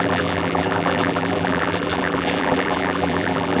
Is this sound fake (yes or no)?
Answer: yes